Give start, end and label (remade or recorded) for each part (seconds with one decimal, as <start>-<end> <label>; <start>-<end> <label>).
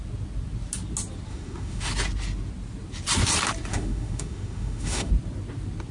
0.0-1.3 recorded; 1.3-1.9 remade; 1.9-3.7 recorded; 3.7-5.1 remade; 5.1-5.9 recorded